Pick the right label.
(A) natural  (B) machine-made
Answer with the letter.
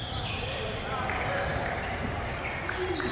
A